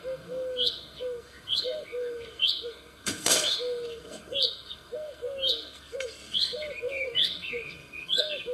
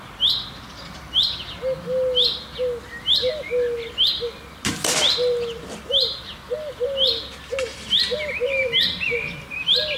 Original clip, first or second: second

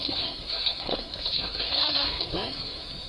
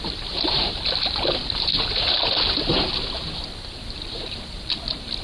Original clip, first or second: second